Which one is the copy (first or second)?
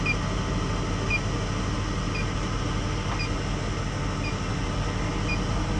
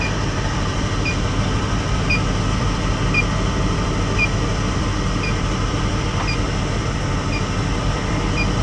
second